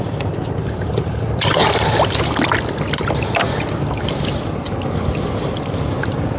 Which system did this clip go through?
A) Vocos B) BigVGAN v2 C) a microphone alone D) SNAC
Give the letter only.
B